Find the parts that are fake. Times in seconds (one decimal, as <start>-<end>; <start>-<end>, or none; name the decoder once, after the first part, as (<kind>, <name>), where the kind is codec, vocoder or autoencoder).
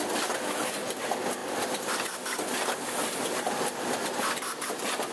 none